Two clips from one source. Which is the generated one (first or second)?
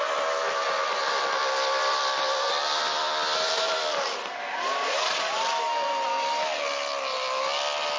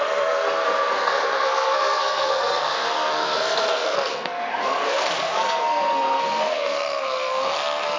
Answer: second